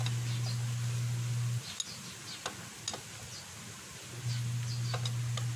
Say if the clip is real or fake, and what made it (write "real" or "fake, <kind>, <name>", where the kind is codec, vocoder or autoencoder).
real